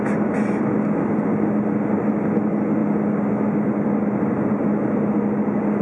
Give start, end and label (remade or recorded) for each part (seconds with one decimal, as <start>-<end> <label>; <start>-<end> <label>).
0.0-5.8 recorded